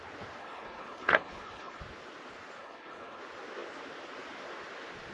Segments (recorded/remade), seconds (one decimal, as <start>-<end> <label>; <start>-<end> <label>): 0.0-0.4 recorded; 0.4-1.8 remade; 1.8-2.6 recorded; 2.6-3.2 remade; 3.2-5.1 recorded